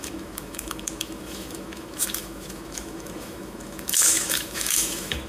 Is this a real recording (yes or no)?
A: no